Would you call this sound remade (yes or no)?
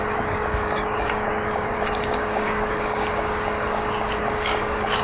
yes